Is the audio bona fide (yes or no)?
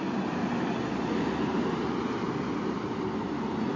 yes